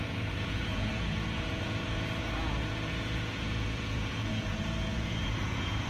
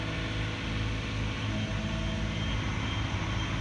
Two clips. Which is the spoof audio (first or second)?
first